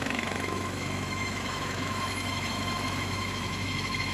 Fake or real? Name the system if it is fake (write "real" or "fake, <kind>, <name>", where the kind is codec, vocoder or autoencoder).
fake, autoencoder, DAC-VAE